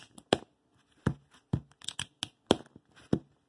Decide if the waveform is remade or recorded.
recorded